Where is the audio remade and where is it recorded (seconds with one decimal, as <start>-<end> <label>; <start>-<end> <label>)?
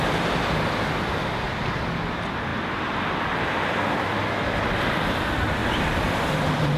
0.0-5.6 recorded; 5.6-6.8 remade